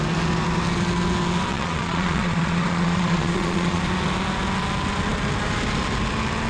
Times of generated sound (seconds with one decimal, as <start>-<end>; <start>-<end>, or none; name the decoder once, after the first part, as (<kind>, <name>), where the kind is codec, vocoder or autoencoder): 1.5-3.8 (vocoder, Vocos)